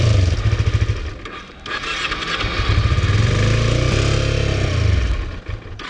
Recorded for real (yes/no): yes